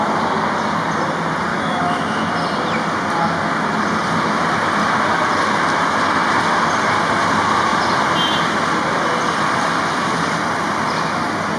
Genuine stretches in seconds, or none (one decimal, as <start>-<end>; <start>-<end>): 0.0-1.5; 2.3-11.6